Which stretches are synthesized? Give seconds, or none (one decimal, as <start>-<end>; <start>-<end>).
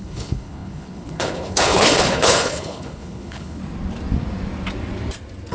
0.0-3.6